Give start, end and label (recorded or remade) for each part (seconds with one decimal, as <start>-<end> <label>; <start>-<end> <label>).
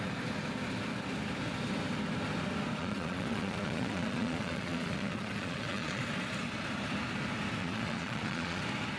0.0-2.8 recorded; 2.8-6.0 remade; 6.0-7.6 recorded; 7.6-8.6 remade; 8.6-9.0 recorded